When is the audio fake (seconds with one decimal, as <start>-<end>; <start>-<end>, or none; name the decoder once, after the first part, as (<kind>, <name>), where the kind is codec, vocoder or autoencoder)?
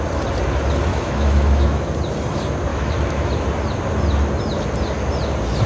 0.9-1.9 (autoencoder, DAC-VAE); 2.7-3.3